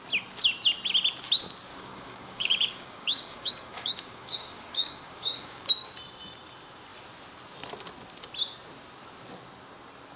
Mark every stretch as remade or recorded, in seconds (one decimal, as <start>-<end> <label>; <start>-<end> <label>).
0.0-1.7 recorded; 1.7-5.7 remade; 5.7-10.2 recorded